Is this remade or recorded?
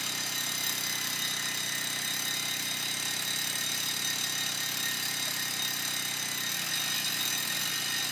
recorded